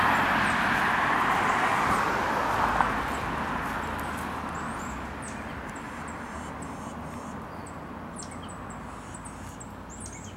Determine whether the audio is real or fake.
real